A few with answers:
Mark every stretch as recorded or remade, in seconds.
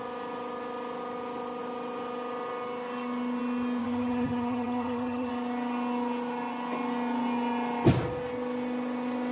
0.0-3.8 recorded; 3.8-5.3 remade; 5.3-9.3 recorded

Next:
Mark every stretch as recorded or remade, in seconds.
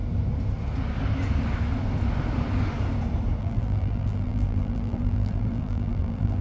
0.0-3.4 recorded; 3.4-6.4 remade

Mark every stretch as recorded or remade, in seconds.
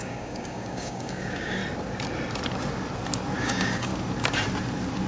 0.0-1.6 remade; 1.6-3.4 recorded; 3.4-3.9 remade; 3.9-5.1 recorded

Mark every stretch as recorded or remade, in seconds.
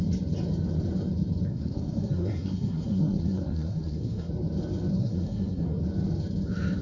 0.0-1.5 recorded; 1.5-4.3 remade; 4.3-5.0 recorded; 5.0-5.8 remade; 5.8-6.8 recorded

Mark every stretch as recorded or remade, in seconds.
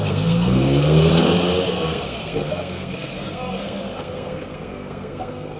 0.0-1.1 remade; 1.1-1.7 recorded; 1.7-5.6 remade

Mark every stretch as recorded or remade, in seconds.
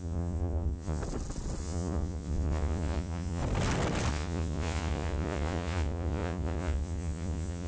0.0-1.0 remade; 1.0-1.6 recorded; 1.6-3.4 remade; 3.4-4.1 recorded; 4.1-7.7 remade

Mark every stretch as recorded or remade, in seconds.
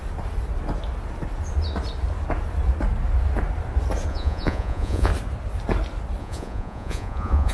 0.0-4.1 recorded; 4.1-5.1 remade; 5.1-6.2 recorded; 6.2-7.5 remade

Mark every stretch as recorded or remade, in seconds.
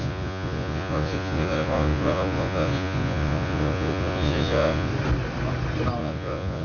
0.0-4.9 remade; 4.9-6.0 recorded; 6.0-6.6 remade